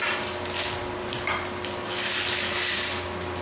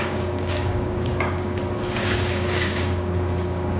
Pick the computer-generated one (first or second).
second